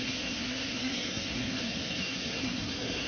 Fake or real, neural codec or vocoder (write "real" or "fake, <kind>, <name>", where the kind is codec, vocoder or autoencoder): fake, codec, SNAC